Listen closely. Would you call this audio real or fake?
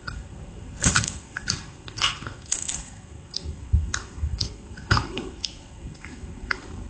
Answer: fake